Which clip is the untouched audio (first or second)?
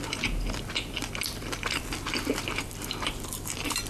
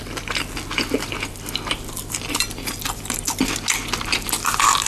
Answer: second